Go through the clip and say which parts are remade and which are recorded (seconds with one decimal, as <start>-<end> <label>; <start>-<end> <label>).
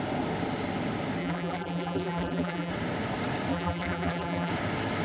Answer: 0.0-1.2 recorded; 1.2-2.7 remade; 2.7-3.5 recorded; 3.5-4.5 remade; 4.5-5.0 recorded